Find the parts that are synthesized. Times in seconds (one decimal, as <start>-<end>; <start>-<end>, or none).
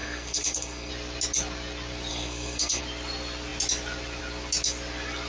0.0-0.9; 2.1-2.8